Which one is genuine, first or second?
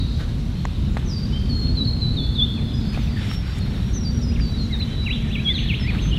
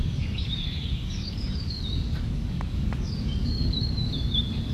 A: first